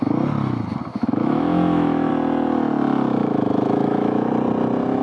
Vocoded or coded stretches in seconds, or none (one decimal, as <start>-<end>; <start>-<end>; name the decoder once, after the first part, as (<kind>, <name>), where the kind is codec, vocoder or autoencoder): 0.9-2.1 (autoencoder, DAC-VAE); 3.2-4.3